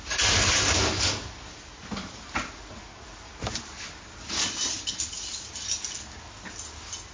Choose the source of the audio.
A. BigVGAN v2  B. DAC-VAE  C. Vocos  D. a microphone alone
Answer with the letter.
D